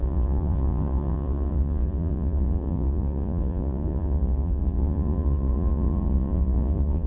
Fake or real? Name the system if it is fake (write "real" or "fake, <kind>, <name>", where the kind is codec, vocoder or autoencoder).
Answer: fake, vocoder, Vocos